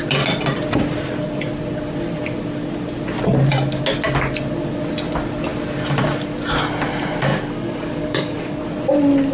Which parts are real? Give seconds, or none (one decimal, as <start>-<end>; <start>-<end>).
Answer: 0.0-7.3; 8.6-9.3

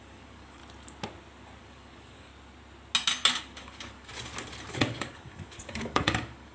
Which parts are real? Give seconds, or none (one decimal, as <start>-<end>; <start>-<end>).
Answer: 0.6-1.6; 2.3-3.4; 4.1-4.7

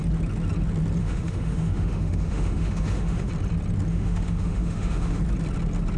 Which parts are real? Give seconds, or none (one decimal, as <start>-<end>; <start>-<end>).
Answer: 0.0-1.0; 3.3-3.9; 5.2-6.0